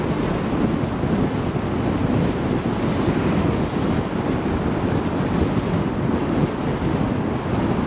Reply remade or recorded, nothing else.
recorded